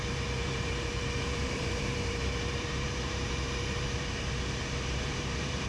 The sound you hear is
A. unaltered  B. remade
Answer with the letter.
B